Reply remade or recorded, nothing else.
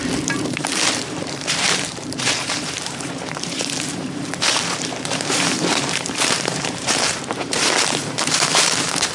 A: remade